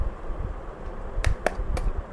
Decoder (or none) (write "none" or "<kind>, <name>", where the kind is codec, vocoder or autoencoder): none